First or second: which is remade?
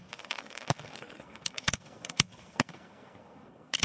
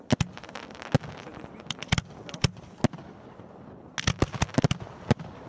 first